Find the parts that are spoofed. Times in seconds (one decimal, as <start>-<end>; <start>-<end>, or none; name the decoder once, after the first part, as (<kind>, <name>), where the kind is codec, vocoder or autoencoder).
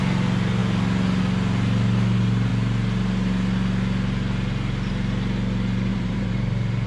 5.9-6.9 (vocoder, BigVGAN v2)